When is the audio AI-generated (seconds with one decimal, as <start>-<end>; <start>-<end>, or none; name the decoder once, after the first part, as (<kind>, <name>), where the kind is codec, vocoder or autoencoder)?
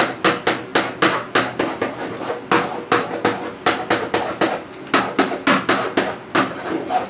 none